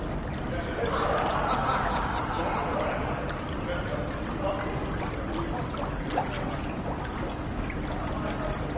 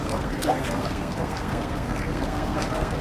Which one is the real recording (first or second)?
first